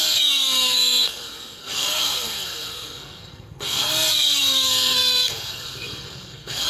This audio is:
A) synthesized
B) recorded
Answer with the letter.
A